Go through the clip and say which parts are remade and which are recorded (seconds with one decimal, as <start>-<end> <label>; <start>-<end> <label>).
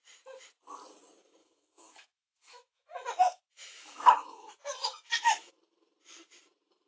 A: 0.0-1.4 recorded; 1.4-5.5 remade; 5.5-6.9 recorded